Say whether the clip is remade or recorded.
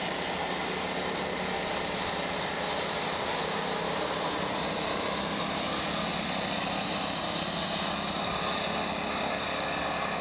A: recorded